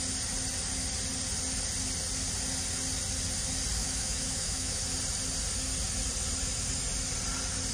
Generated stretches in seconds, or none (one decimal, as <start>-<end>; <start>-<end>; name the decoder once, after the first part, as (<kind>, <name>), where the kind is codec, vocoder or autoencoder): 3.8-4.8 (autoencoder, DAC-VAE)